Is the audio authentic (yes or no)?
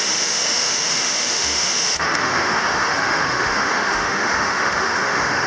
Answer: no